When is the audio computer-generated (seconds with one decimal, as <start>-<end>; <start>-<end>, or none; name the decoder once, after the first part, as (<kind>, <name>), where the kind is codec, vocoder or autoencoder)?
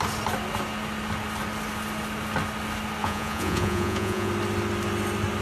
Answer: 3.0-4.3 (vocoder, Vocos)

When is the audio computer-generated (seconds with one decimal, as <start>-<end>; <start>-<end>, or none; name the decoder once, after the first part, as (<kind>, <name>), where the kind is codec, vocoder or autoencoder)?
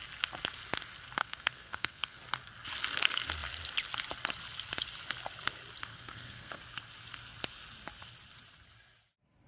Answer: 1.2-2.2 (codec, SNAC); 5.9-6.6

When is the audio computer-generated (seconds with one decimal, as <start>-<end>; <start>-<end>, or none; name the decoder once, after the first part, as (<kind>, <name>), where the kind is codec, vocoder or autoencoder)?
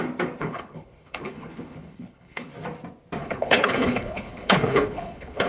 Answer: 0.4-2.5 (codec, HILCodec); 3.2-5.5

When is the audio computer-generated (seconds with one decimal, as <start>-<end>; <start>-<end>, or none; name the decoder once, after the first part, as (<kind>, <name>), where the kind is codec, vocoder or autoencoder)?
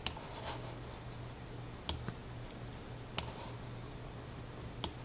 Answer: none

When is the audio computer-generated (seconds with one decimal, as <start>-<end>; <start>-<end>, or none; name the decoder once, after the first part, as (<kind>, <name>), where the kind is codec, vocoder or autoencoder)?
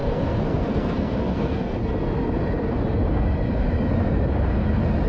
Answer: 0.0-1.8 (codec, SNAC)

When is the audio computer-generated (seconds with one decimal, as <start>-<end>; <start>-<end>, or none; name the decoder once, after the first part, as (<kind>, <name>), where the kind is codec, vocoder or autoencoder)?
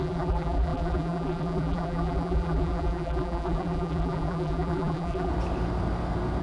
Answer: 0.0-5.3 (vocoder, BigVGAN v2)